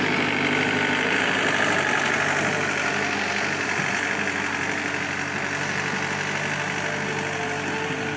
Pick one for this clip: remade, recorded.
recorded